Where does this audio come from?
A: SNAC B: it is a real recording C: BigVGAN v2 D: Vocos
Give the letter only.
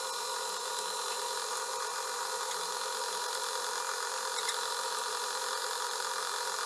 B